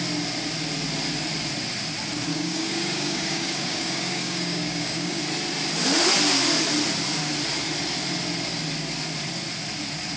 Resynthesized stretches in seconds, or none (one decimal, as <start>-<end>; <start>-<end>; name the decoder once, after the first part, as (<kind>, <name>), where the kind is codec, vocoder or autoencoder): 2.3-5.2 (codec, DAC)